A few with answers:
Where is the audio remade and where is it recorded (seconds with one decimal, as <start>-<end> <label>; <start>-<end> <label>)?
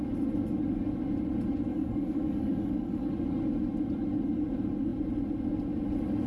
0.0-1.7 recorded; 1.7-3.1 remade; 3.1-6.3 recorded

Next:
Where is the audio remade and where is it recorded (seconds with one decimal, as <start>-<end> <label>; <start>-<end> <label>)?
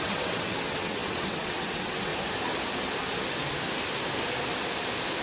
0.0-2.1 remade; 2.1-5.2 recorded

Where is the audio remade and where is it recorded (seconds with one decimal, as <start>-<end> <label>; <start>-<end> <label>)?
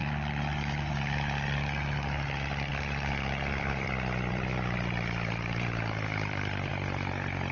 0.0-0.9 remade; 0.9-2.7 recorded; 2.7-6.7 remade; 6.7-7.5 recorded